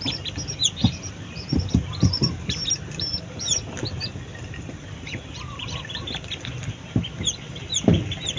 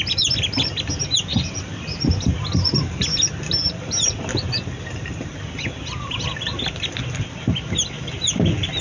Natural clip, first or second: second